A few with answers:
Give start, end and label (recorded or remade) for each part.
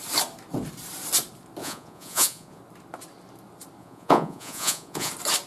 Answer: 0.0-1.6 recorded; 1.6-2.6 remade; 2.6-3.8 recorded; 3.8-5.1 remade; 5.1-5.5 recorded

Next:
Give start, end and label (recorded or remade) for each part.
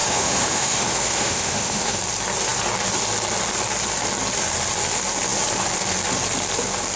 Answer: 0.0-2.0 remade; 2.0-7.0 recorded